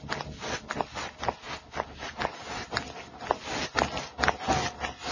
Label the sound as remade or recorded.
recorded